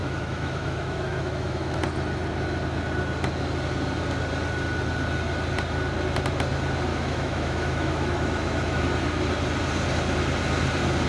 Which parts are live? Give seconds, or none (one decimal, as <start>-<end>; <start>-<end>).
1.8-6.9; 8.8-11.1